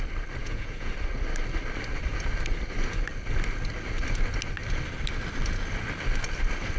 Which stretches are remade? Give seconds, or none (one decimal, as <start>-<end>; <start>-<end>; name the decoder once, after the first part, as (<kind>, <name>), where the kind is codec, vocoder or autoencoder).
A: 0.4-0.9 (vocoder, Vocos)